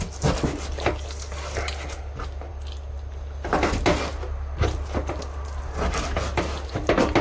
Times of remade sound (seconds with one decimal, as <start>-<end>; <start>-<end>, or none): none